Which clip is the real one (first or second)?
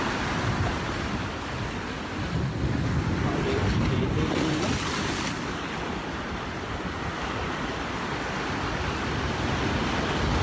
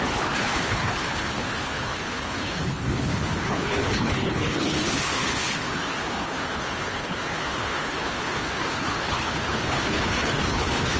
first